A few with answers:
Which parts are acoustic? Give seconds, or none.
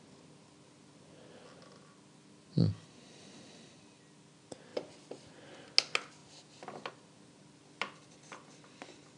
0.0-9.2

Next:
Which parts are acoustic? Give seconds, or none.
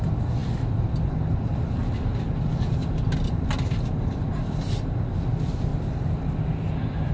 1.8-4.1; 5.7-7.1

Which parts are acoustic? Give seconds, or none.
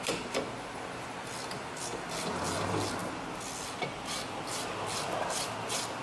0.0-6.0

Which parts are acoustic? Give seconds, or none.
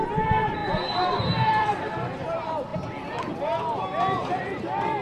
0.0-0.6; 1.9-4.4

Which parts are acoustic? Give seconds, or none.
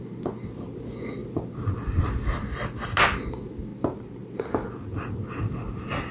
0.0-3.7; 4.4-6.1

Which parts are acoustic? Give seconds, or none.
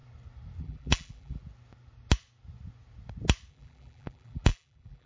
0.0-0.6; 1.4-3.5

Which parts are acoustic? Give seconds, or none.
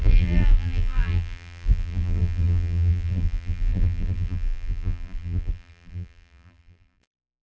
none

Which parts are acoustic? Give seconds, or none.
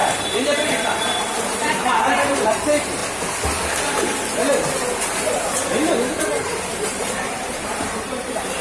0.0-1.0; 3.0-6.2